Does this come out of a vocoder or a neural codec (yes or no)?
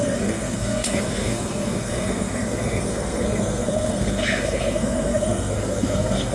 yes